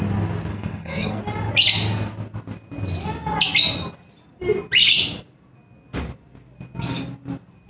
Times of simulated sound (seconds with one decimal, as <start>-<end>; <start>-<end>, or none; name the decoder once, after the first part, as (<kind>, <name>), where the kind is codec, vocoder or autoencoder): 0.5-1.2 (codec, SNAC)